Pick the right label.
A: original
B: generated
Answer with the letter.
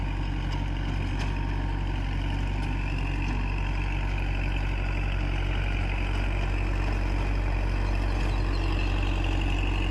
A